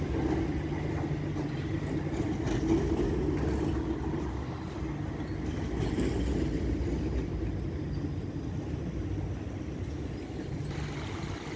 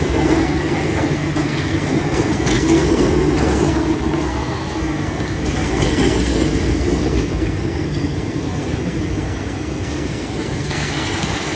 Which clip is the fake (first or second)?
second